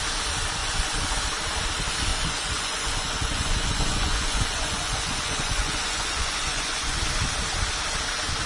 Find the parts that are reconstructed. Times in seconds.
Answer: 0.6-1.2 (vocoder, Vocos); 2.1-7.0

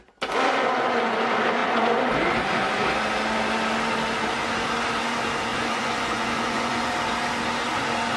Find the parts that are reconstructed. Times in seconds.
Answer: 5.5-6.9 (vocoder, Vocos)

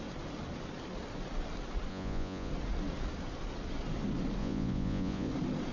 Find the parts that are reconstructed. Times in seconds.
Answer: 1.9-2.5 (vocoder, Vocos); 4.4-5.3

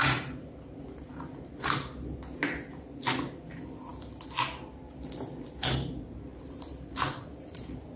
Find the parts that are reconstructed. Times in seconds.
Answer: 0.0-1.8 (vocoder, BigVGAN v2); 3.9-4.7; 6.3-7.6

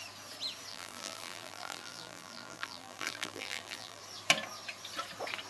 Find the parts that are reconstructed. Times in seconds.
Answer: 0.7-4.0 (vocoder, BigVGAN v2)

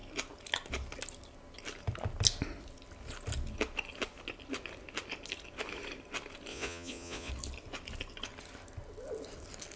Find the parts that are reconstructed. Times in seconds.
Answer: 6.5-7.3 (vocoder, Vocos)

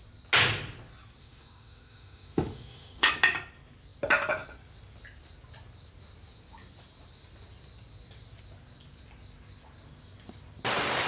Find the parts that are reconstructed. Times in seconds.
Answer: 1.2-3.1 (autoencoder, DAC-VAE)

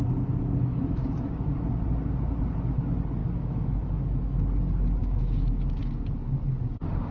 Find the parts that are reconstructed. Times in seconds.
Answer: 0.7-1.5 (autoencoder, DAC-VAE); 3.2-4.4; 5.0-5.8